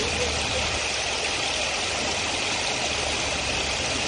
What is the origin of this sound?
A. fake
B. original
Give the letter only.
B